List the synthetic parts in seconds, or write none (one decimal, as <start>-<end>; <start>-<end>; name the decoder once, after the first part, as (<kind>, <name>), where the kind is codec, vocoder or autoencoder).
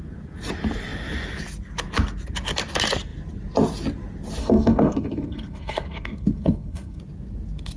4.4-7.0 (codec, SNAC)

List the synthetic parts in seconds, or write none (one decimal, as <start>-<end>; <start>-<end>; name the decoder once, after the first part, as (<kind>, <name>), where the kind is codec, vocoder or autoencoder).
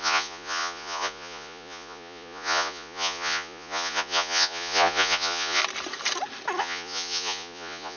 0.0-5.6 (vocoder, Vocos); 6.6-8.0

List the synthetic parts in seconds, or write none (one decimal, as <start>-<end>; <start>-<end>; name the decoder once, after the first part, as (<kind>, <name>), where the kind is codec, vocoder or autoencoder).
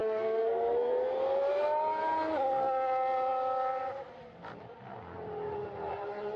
0.0-0.9 (codec, SNAC)